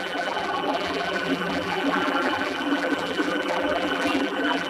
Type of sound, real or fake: fake